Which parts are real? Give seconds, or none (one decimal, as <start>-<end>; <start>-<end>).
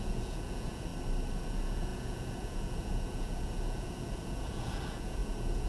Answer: 0.9-1.4